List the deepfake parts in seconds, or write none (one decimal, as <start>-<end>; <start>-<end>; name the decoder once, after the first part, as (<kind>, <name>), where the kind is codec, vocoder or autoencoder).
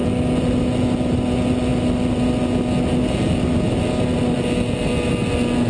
none